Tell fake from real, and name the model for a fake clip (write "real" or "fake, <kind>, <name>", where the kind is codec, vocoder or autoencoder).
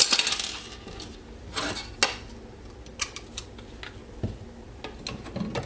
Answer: real